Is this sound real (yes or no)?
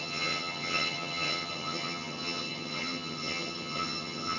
no